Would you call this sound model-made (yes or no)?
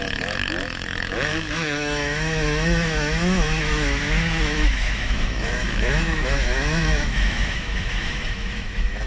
yes